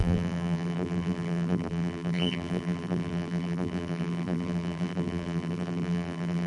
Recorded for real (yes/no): no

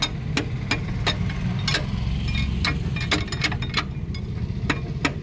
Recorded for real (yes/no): yes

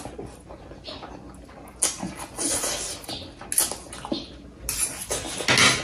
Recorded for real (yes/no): yes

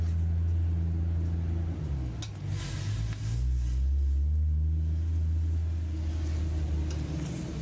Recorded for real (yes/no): yes